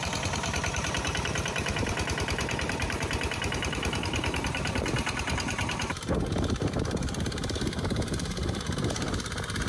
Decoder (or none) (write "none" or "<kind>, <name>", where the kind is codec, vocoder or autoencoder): vocoder, BigVGAN v2